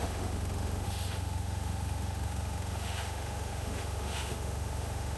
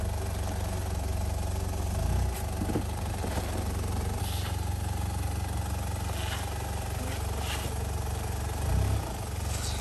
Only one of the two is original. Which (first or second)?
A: second